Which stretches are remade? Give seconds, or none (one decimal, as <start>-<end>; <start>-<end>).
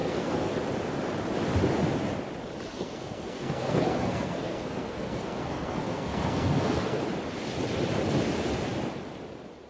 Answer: 0.0-0.5; 2.7-7.0